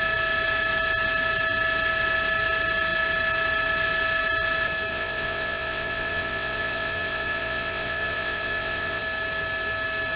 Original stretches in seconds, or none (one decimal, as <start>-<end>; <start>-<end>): 0.0-4.9; 9.0-10.2